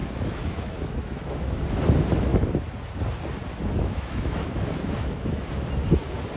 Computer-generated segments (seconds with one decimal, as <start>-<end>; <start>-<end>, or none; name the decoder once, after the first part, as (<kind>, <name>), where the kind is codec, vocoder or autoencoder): 0.0-1.8 (autoencoder, DAC-VAE); 3.5-5.5